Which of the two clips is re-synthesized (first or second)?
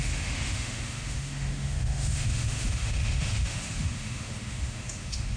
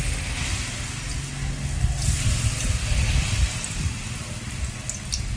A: first